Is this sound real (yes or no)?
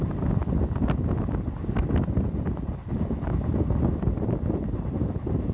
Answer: yes